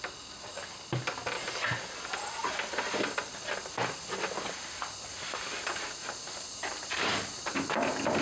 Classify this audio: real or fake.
real